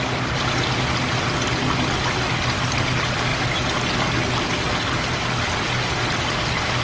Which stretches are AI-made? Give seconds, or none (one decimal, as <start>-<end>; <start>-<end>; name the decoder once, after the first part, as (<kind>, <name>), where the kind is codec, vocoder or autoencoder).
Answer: none